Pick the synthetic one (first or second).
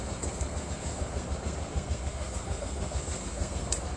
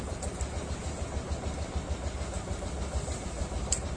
first